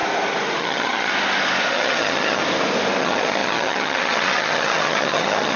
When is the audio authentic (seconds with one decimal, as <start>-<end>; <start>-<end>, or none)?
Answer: 0.0-0.6; 1.1-1.7; 2.4-3.0

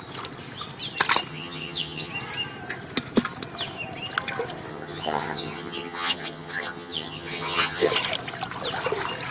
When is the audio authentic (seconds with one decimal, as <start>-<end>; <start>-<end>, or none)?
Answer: 0.0-1.3; 2.1-4.7; 7.9-9.3

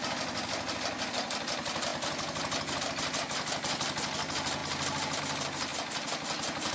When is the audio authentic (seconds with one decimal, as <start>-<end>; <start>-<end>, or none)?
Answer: 0.0-6.7

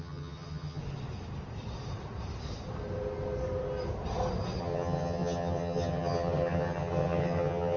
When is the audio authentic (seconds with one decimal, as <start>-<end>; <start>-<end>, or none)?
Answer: 0.8-4.6

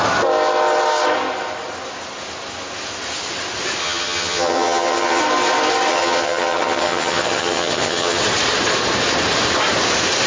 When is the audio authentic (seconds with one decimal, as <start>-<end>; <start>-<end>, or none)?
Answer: 0.0-3.8; 5.2-5.9; 8.2-10.3

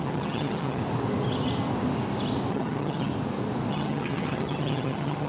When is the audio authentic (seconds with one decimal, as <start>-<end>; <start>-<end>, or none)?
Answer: 0.8-2.5; 3.1-3.7

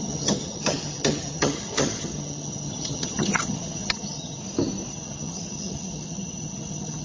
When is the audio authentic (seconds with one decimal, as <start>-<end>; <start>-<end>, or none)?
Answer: 4.4-4.9

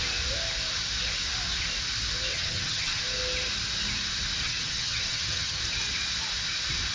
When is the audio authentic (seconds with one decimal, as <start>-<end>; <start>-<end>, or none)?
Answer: 0.0-2.3; 3.0-4.4; 5.6-6.9